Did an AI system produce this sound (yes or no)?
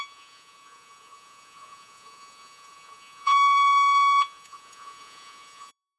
yes